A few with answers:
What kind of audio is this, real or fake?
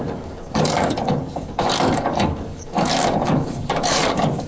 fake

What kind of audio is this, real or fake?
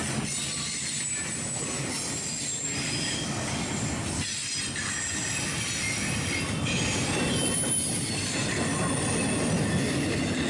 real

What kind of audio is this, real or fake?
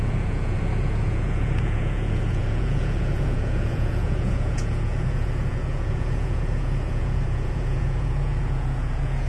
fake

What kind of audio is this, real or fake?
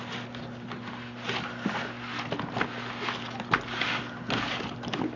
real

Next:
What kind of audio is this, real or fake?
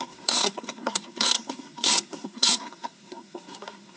fake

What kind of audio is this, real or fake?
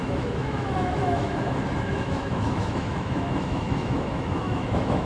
fake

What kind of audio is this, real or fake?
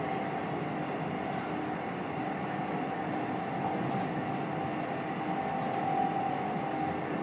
real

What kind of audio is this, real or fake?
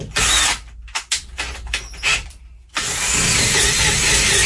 real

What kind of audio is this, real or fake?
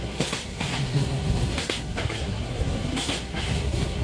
fake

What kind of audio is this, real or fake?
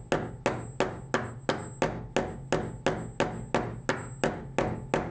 real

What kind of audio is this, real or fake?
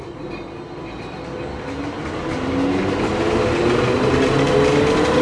real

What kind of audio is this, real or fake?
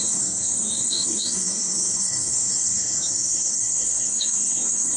fake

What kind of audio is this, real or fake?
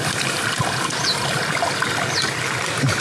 real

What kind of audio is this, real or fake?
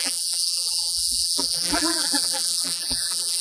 fake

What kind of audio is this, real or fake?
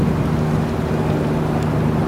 real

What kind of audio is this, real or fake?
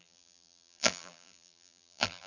fake